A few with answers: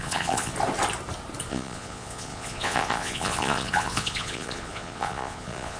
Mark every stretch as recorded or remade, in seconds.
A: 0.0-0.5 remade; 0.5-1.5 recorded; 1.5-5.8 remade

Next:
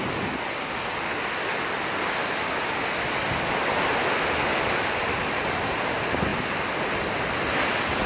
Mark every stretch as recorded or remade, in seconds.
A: 0.0-8.1 recorded